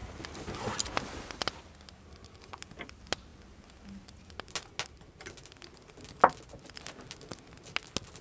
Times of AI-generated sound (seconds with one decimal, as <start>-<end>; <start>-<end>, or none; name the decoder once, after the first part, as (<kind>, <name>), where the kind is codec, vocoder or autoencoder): none